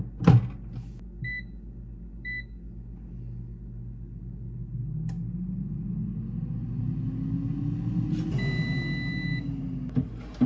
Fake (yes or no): no